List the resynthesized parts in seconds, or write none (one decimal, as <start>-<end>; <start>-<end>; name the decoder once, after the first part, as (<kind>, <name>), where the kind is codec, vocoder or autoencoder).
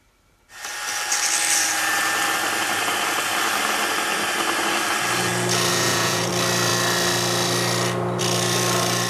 5.7-6.3 (vocoder, Vocos)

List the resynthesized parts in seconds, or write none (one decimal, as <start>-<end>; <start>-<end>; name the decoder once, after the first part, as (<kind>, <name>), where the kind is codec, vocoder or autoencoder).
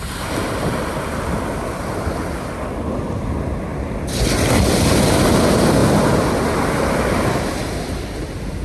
none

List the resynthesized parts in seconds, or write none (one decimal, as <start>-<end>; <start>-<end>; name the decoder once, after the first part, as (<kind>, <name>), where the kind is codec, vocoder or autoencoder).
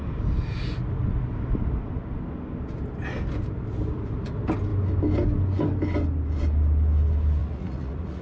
7.4-8.2 (vocoder, Vocos)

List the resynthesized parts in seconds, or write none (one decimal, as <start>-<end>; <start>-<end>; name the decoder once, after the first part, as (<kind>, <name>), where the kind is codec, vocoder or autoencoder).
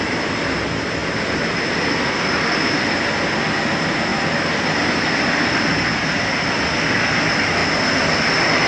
none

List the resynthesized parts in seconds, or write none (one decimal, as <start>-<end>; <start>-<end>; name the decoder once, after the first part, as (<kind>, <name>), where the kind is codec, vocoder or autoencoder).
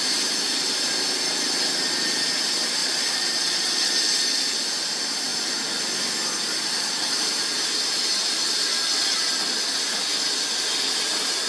2.8-4.0 (vocoder, Vocos)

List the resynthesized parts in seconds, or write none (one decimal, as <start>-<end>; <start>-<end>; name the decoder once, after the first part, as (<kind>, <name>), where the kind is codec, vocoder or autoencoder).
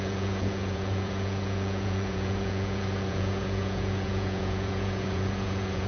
0.0-5.9 (vocoder, Vocos)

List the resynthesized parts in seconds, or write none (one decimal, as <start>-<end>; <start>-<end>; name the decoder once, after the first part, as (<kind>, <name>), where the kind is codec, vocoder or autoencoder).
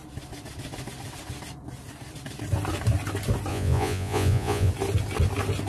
3.5-4.7 (vocoder, Vocos)